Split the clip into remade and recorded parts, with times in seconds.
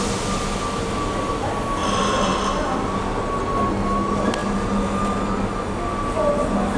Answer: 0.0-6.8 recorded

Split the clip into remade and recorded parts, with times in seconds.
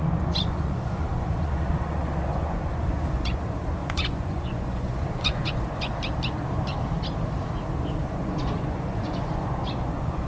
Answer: 0.0-5.9 remade; 5.9-8.1 recorded; 8.1-10.3 remade